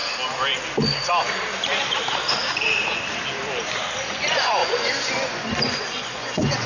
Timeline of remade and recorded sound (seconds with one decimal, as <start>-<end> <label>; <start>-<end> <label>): 0.0-4.0 recorded; 4.0-6.7 remade